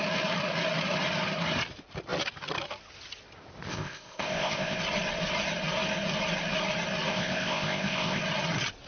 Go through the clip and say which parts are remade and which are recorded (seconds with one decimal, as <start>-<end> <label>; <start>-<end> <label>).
0.0-3.7 recorded; 3.7-4.8 remade; 4.8-7.1 recorded; 7.1-8.2 remade; 8.2-8.9 recorded

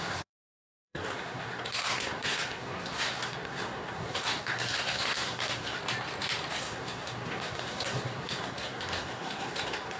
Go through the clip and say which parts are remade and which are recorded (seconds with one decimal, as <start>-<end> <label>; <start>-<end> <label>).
0.0-5.8 remade; 5.8-6.5 recorded; 6.5-10.0 remade

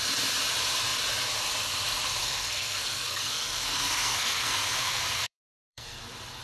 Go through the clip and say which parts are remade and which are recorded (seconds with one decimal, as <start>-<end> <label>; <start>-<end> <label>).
0.0-2.2 recorded; 2.2-6.0 remade; 6.0-6.4 recorded

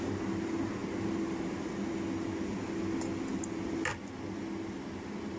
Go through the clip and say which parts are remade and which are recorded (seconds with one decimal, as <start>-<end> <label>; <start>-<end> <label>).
0.0-5.4 recorded